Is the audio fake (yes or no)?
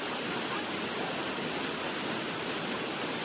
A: no